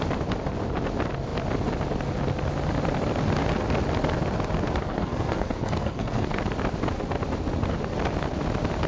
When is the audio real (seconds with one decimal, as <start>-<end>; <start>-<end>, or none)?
0.0-4.9; 6.4-8.9

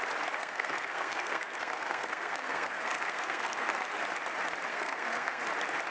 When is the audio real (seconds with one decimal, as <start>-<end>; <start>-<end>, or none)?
0.0-0.4; 3.9-4.7; 5.4-5.9

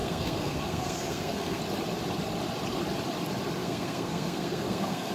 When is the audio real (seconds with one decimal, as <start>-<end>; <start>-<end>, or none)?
1.6-3.6

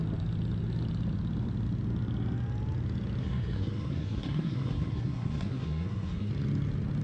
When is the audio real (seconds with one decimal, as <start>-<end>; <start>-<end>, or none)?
0.0-3.2; 6.3-7.0

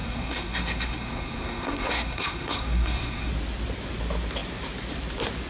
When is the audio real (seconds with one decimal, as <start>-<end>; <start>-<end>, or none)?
3.3-5.5

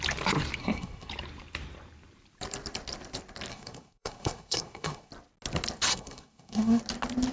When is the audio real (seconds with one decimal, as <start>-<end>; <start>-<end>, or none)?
0.0-0.6; 1.1-3.5; 5.1-5.9; 6.8-7.3

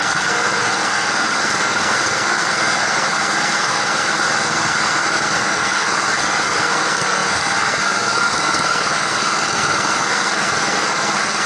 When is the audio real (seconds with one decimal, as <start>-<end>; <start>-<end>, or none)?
none

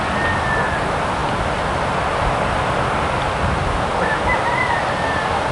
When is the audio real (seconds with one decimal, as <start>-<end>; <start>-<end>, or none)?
0.0-5.5